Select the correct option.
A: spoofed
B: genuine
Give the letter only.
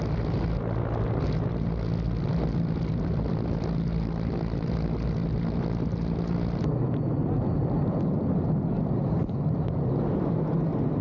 B